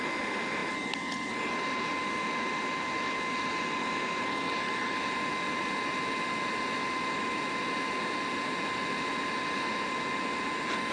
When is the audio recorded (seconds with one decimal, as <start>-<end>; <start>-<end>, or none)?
0.0-10.9